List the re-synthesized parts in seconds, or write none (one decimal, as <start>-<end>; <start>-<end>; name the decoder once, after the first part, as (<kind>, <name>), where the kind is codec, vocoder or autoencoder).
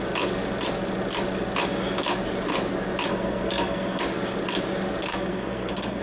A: 3.1-4.0 (codec, SNAC); 5.1-6.0